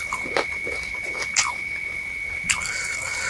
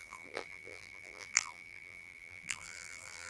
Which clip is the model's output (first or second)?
second